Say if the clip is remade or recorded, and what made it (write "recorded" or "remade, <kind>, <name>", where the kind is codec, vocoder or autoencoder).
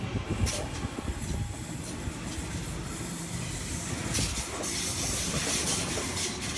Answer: recorded